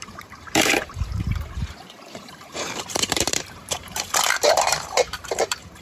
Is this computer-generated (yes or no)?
yes